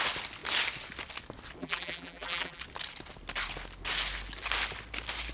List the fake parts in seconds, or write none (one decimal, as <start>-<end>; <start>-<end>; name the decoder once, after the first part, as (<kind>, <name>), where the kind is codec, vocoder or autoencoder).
1.6-2.6 (vocoder, BigVGAN v2)